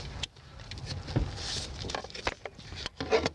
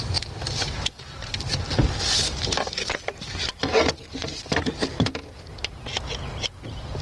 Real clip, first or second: first